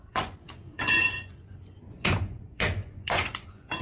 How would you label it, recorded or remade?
remade